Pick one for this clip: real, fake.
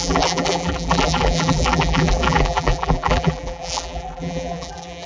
fake